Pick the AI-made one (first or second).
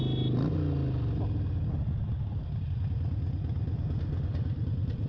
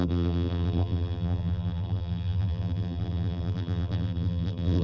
second